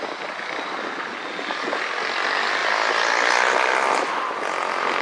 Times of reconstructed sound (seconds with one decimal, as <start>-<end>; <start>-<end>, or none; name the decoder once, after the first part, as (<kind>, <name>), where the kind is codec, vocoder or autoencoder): none